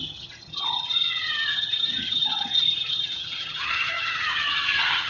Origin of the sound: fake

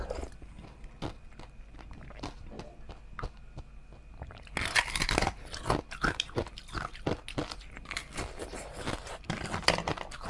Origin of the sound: real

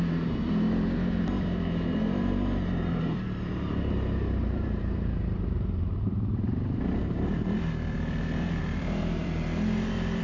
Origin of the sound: fake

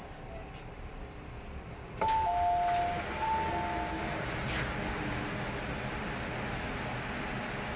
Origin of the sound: real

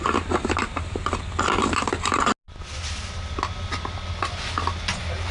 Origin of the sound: real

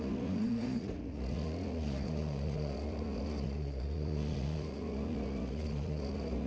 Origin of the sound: fake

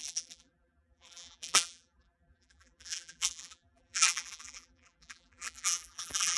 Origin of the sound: fake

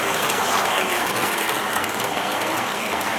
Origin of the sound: fake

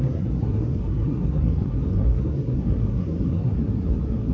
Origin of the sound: fake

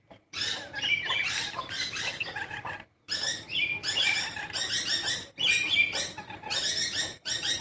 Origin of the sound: fake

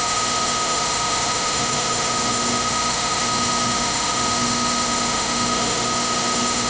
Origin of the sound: fake